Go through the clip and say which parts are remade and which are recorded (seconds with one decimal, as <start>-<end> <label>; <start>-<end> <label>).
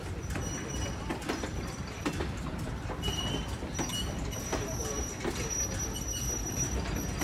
0.0-1.1 recorded; 1.1-3.1 remade; 3.1-3.9 recorded; 3.9-5.6 remade; 5.6-7.2 recorded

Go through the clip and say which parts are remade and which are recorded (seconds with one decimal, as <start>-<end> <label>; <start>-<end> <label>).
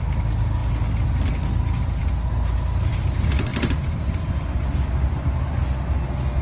0.0-3.5 recorded; 3.5-4.2 remade; 4.2-6.4 recorded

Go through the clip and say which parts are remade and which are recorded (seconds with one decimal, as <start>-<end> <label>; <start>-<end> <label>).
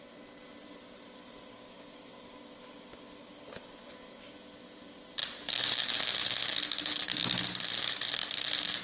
0.0-8.8 recorded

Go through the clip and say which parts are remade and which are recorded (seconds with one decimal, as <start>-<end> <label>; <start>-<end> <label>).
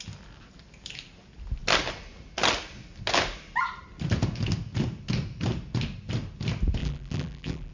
0.0-6.8 recorded; 6.8-7.7 remade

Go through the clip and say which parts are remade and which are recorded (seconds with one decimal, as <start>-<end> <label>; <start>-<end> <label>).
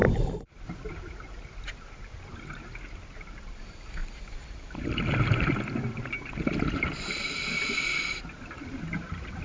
0.0-3.6 remade; 3.6-4.0 recorded; 4.0-9.4 remade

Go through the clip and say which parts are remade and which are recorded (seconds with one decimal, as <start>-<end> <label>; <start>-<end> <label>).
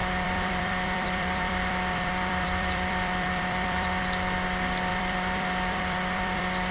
0.0-4.0 remade; 4.0-4.9 recorded; 4.9-6.7 remade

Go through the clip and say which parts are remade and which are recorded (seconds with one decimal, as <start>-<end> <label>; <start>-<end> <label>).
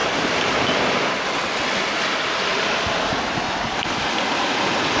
0.0-5.0 recorded